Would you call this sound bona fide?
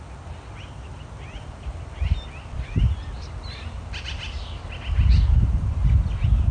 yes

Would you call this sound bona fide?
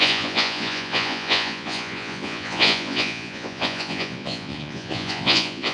no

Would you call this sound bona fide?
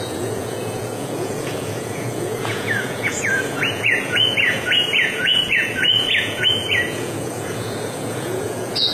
no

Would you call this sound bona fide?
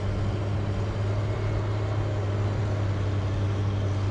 yes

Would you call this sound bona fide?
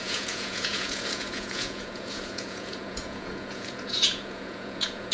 no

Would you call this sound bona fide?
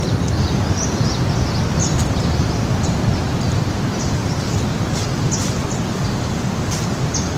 yes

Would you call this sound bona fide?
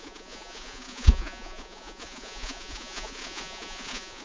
no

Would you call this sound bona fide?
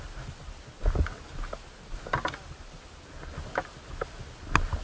yes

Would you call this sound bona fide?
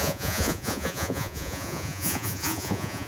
no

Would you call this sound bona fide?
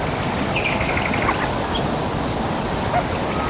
yes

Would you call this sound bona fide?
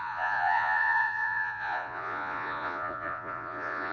no